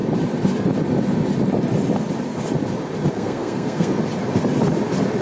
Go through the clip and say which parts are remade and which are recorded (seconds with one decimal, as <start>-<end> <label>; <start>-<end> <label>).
0.0-3.1 recorded; 3.1-3.9 remade; 3.9-5.2 recorded